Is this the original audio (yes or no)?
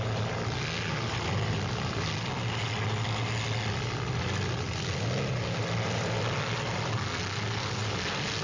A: yes